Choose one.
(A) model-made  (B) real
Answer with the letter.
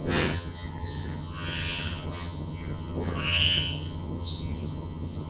A